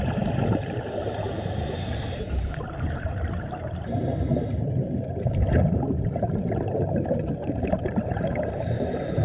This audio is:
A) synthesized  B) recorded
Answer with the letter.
A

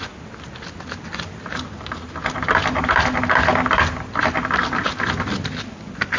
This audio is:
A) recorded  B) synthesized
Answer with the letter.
A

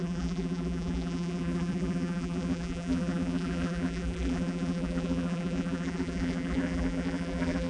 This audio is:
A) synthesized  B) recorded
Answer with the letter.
A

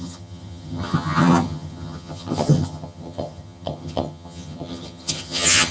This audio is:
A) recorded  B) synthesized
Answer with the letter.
B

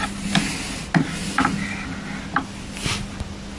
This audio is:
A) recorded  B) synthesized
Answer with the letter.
A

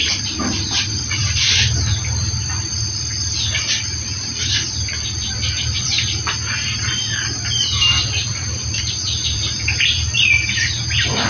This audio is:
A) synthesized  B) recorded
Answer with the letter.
A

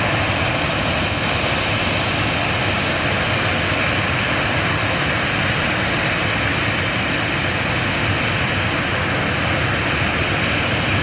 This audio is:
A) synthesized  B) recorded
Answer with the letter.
B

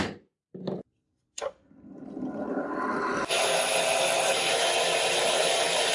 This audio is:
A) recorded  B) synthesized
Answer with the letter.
A